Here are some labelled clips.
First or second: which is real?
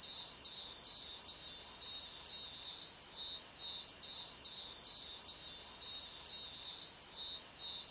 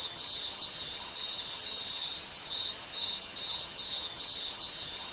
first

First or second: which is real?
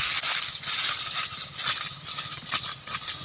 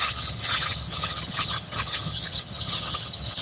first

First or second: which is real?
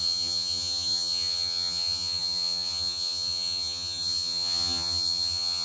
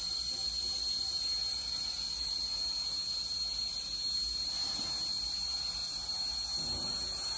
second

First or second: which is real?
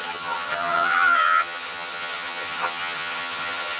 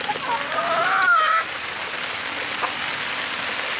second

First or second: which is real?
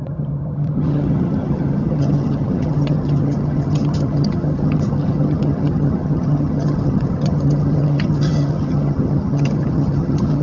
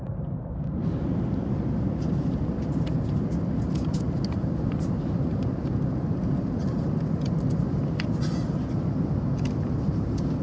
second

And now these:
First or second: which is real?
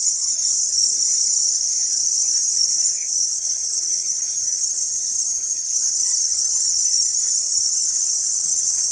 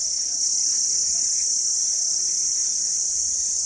second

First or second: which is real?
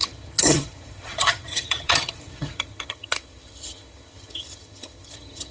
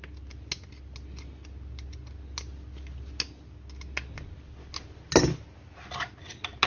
second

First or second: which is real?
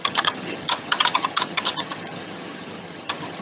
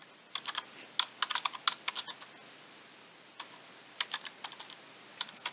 second